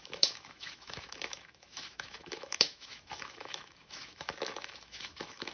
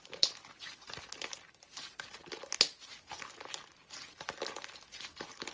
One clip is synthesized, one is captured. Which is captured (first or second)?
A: second